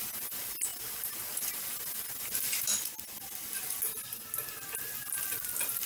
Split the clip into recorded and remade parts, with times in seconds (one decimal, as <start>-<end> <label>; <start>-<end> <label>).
0.0-5.9 recorded